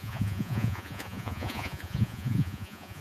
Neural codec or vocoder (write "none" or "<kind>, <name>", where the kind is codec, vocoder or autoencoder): vocoder, Vocos